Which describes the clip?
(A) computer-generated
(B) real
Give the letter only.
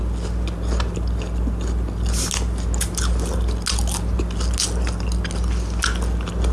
B